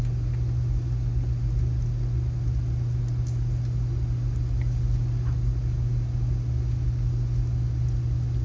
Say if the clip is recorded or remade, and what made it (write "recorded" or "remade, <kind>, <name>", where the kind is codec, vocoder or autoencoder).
recorded